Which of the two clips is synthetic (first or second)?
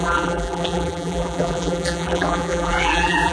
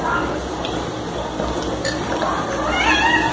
first